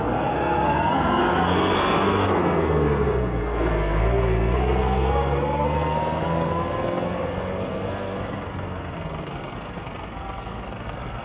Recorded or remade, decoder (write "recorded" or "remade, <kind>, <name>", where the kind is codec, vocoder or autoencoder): remade, codec, SNAC